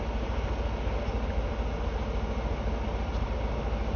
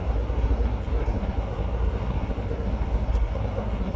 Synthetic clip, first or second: second